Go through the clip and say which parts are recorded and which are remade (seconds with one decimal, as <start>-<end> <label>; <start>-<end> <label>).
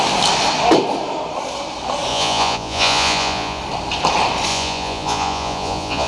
0.0-2.1 recorded; 2.1-3.6 remade; 3.6-4.5 recorded; 4.5-6.1 remade